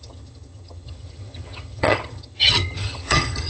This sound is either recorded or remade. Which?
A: remade